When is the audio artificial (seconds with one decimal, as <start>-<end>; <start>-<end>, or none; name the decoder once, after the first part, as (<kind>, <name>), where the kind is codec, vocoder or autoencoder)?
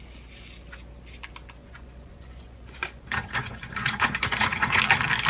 1.6-4.8 (vocoder, Vocos)